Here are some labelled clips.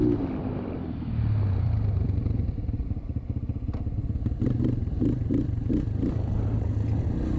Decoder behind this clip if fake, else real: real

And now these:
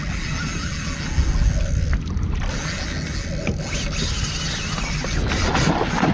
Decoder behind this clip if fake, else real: real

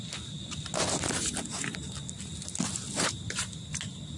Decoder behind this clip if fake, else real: real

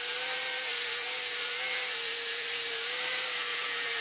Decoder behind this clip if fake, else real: fake, vocoder, BigVGAN v2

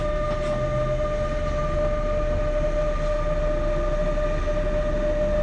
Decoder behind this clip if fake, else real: real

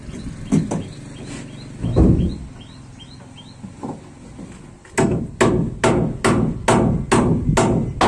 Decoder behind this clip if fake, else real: real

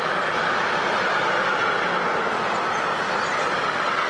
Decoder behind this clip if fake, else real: real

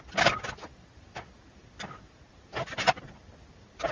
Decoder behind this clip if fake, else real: real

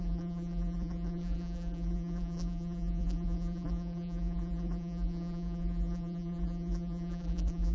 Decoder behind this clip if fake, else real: fake, vocoder, BigVGAN v2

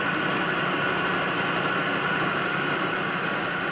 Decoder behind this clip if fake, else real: fake, vocoder, BigVGAN v2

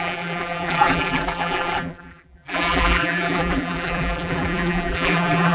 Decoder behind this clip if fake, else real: fake, vocoder, BigVGAN v2